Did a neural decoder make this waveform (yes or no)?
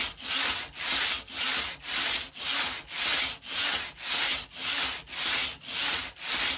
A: no